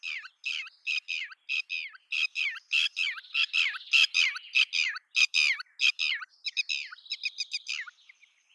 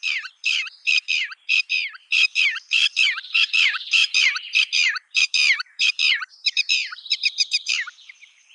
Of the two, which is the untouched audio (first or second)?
first